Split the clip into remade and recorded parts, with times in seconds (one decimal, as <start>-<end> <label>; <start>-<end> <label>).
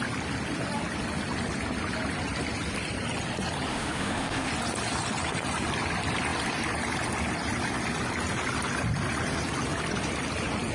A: 0.0-3.7 recorded; 3.7-4.5 remade; 4.5-10.7 recorded